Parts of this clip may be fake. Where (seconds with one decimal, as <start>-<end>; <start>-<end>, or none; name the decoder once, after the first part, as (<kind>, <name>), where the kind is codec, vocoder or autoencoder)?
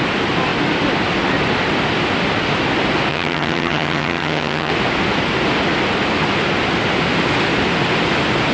3.1-4.7 (vocoder, HiFi-GAN)